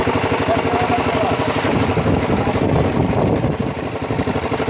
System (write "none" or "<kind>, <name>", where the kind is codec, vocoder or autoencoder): none